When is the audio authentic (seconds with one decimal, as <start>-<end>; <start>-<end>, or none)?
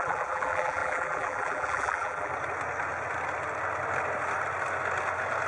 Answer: 2.3-5.5